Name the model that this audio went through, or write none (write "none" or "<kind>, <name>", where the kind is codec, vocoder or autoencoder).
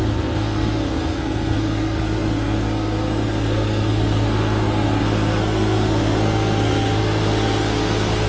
codec, SNAC